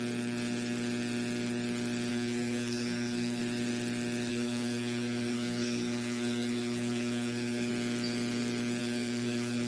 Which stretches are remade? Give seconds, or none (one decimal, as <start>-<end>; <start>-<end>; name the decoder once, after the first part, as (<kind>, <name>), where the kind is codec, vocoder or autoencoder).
2.1-3.4 (codec, SNAC); 4.3-7.7; 8.8-9.7